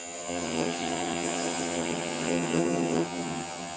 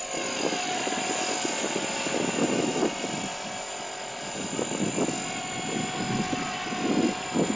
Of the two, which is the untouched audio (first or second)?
second